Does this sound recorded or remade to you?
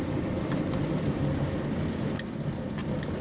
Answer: remade